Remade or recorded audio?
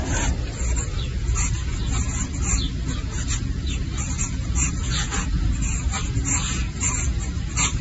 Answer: recorded